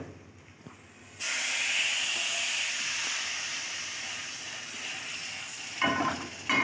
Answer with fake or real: real